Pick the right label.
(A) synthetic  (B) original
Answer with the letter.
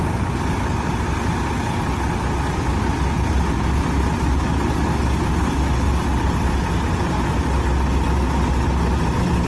B